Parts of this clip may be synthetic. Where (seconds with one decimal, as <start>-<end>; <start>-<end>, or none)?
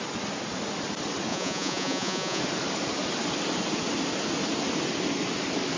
1.3-2.4